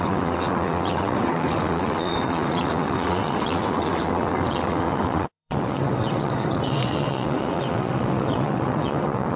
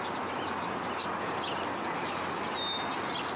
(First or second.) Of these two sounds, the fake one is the first